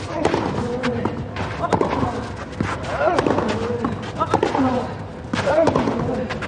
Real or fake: real